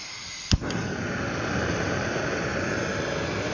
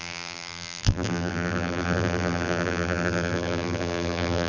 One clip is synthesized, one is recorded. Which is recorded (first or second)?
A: first